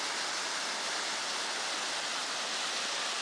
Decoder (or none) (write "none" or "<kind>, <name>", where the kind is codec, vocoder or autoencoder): none